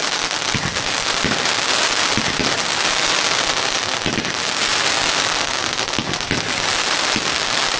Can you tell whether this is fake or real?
real